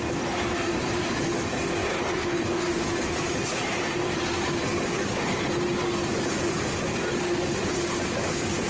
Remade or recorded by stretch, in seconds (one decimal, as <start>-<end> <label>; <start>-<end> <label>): 0.0-1.8 recorded; 1.8-2.6 remade; 2.6-8.7 recorded